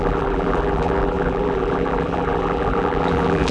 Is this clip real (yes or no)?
no